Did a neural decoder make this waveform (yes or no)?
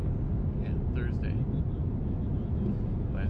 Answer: no